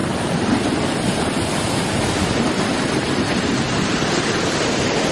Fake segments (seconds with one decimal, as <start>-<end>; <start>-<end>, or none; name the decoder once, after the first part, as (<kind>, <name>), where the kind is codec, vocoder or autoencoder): none